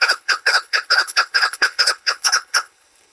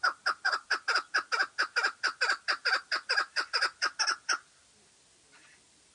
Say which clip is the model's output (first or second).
first